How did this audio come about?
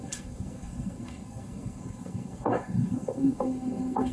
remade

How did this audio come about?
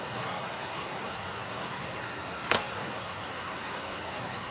remade